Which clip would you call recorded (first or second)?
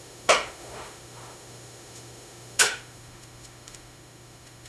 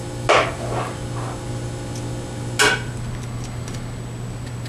second